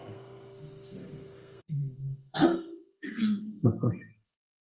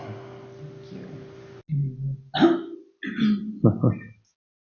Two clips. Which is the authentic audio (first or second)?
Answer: second